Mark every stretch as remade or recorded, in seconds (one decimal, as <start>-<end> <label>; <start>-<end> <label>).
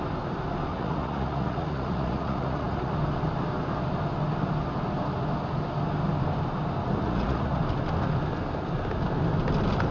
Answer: 0.0-0.7 recorded; 0.7-2.9 remade; 2.9-7.0 recorded; 7.0-7.6 remade; 7.6-9.9 recorded